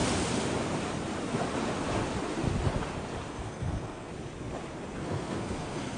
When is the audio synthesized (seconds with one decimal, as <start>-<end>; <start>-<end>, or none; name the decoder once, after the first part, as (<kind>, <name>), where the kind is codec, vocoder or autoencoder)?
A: 3.3-4.1 (codec, SNAC); 5.0-6.0